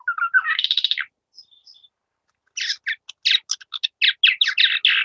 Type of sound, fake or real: real